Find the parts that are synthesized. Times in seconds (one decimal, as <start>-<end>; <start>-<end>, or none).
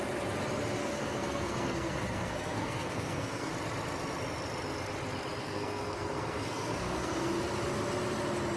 0.8-3.5; 5.4-7.3